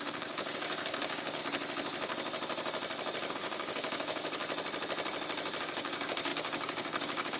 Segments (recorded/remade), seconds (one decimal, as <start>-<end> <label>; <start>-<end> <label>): 0.0-1.4 remade; 1.4-3.3 recorded; 3.3-4.4 remade; 4.4-5.6 recorded; 5.6-7.4 remade